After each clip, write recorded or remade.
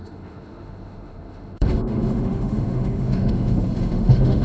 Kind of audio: remade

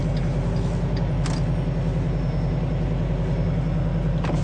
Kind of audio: recorded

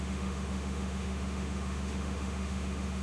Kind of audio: remade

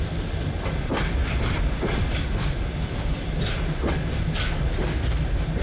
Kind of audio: recorded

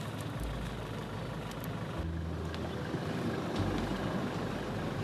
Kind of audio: recorded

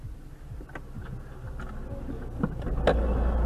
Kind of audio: recorded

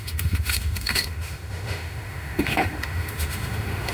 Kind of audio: remade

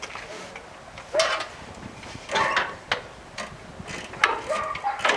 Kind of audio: recorded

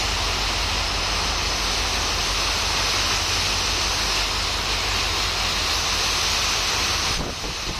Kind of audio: recorded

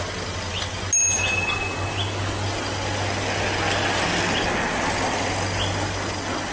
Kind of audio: recorded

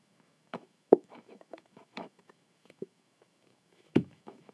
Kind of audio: remade